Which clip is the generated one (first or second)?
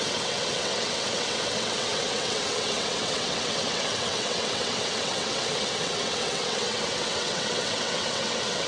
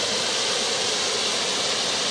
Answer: first